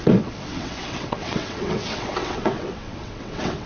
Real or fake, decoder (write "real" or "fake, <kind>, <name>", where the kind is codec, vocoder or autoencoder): fake, vocoder, WaveNeXt